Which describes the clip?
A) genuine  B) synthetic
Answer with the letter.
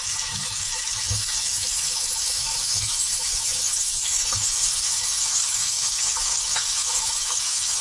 B